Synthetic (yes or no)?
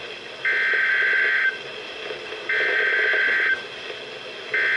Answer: no